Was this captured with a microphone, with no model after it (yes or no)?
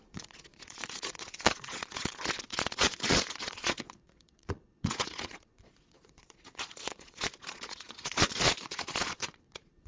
no